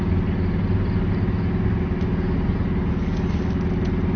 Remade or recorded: recorded